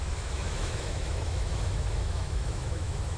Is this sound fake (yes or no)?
yes